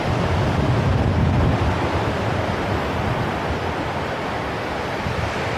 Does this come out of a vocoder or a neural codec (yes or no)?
no